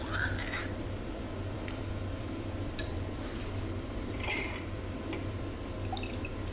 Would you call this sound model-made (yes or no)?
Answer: yes